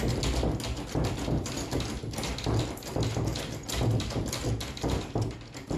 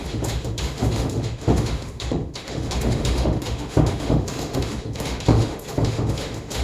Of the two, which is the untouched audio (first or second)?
first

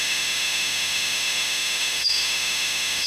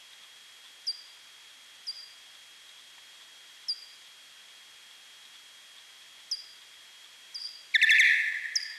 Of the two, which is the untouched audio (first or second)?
second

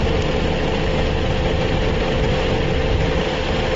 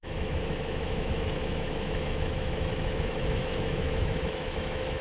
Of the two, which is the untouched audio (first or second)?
first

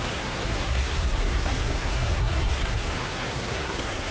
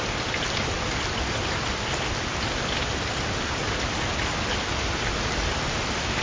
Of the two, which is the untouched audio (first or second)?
second